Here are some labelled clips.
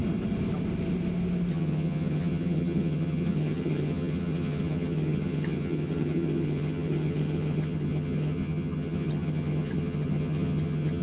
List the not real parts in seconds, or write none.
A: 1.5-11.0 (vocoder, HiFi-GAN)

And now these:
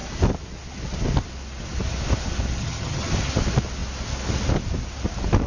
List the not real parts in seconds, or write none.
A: 2.6-3.1 (vocoder, HiFi-GAN)

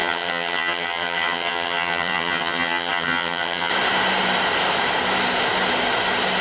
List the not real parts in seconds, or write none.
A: 0.0-3.7 (vocoder, HiFi-GAN)

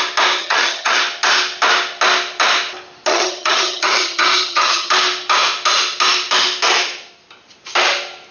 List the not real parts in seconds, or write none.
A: 0.4-1.0 (vocoder, HiFi-GAN); 3.1-4.9

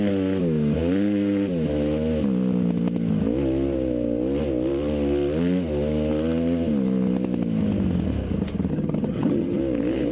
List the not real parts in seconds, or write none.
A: 8.7-9.6 (vocoder, HiFi-GAN)

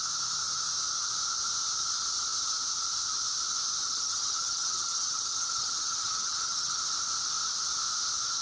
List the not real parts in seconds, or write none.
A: 3.8-6.8 (vocoder, HiFi-GAN)

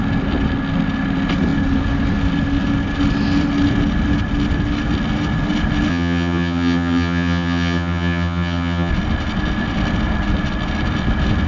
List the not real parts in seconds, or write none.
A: 5.9-8.9 (vocoder, HiFi-GAN)

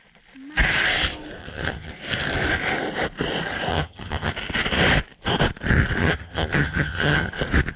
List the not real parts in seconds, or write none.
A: 1.4-1.9 (vocoder, HiFi-GAN); 3.7-4.3; 6.0-7.3